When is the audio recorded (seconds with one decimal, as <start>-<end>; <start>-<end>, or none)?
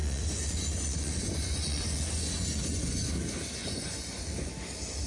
3.1-3.6; 4.5-5.1